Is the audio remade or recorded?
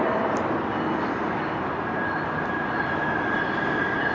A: recorded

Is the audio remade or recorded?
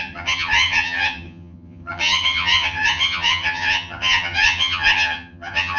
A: remade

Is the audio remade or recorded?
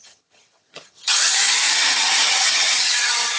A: remade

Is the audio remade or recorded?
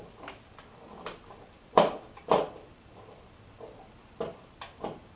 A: recorded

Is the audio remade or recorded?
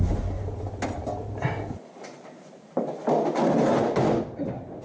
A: recorded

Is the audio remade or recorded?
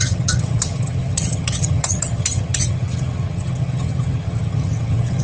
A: remade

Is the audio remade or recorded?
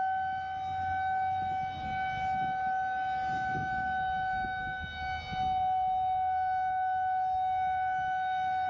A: recorded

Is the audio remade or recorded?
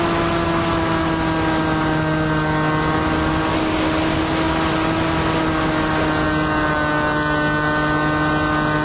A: recorded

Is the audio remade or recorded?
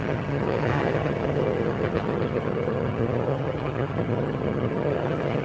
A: remade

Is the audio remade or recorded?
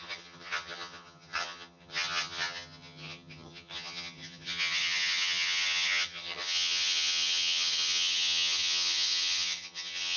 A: remade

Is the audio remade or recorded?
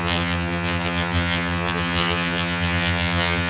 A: remade